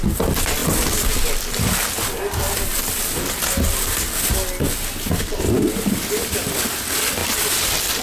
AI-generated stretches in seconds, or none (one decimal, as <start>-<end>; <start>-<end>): none